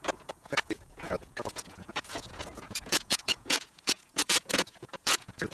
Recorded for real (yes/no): no